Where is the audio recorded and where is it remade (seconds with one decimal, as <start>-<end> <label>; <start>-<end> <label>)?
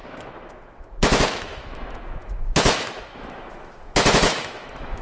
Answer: 0.0-5.0 remade